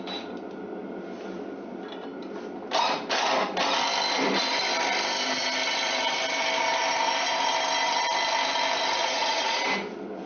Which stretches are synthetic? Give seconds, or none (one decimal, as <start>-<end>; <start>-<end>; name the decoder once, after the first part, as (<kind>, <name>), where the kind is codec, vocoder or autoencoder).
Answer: 9.0-9.6 (vocoder, Vocos)